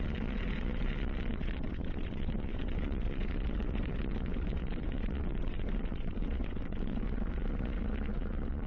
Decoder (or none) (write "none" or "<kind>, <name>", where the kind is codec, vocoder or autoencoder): vocoder, WaveNeXt